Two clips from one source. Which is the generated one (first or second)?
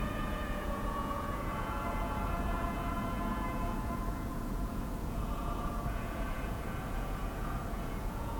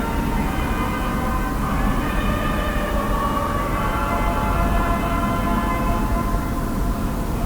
first